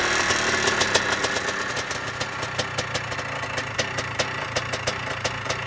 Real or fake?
real